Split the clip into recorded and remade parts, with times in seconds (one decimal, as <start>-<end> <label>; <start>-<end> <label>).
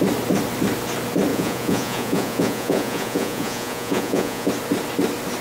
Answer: 0.0-1.3 recorded; 1.3-4.5 remade; 4.5-5.4 recorded